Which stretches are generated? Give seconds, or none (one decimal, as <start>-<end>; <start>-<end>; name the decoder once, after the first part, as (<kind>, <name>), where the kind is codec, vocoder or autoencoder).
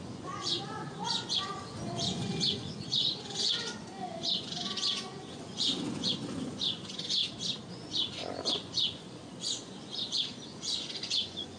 0.0-7.2 (vocoder, Vocos); 7.7-11.6